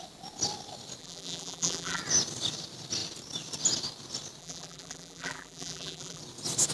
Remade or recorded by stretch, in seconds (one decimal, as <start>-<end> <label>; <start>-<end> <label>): 0.0-1.0 recorded; 1.0-2.0 remade; 2.0-4.4 recorded; 4.4-6.2 remade; 6.2-6.7 recorded